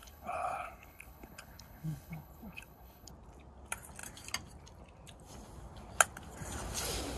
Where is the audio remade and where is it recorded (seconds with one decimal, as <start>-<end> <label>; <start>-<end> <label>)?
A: 0.0-3.1 remade; 3.1-7.2 recorded